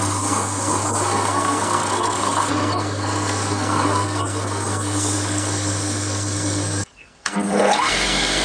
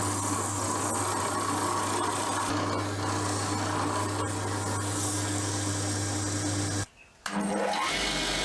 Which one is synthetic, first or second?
first